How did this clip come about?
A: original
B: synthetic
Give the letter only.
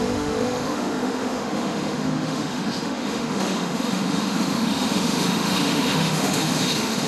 B